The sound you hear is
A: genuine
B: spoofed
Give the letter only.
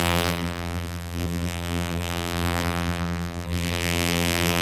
B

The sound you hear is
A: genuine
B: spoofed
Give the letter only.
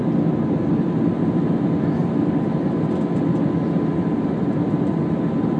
A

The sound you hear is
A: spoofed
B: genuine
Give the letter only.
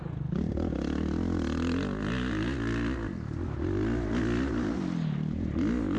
B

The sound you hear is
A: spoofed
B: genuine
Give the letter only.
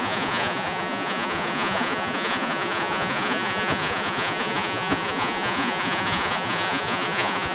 A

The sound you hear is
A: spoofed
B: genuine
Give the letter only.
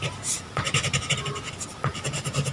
B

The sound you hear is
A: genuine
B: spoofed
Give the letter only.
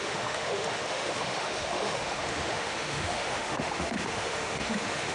B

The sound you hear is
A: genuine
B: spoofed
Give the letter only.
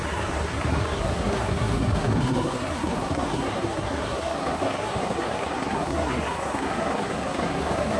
B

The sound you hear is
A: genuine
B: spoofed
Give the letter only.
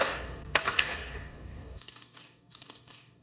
B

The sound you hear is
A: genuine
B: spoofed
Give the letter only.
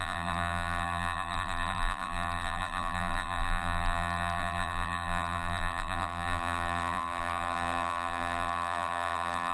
B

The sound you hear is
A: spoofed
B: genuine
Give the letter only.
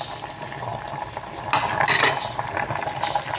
B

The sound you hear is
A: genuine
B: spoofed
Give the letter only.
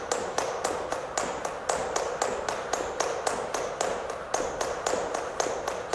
A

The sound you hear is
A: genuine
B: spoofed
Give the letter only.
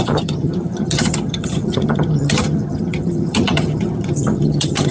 B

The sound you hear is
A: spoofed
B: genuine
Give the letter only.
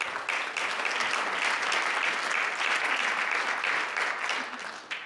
B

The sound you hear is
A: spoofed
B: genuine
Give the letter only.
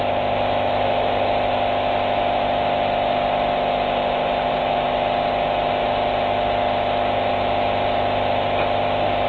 B